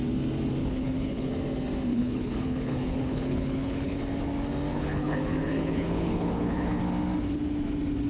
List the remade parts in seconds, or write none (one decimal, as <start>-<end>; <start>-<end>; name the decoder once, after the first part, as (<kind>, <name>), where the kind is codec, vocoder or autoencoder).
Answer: 0.6-1.3 (codec, HILCodec); 1.9-4.0; 4.7-6.8